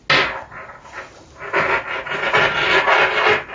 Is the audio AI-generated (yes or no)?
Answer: no